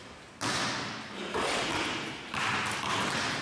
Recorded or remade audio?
recorded